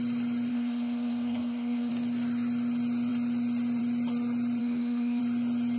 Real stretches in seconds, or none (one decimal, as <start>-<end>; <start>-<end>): 0.0-0.5; 1.9-4.6; 5.2-5.8